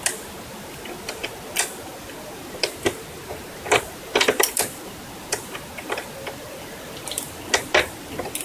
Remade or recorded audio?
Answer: recorded